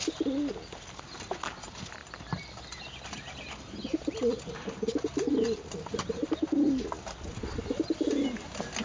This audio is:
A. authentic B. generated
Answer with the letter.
A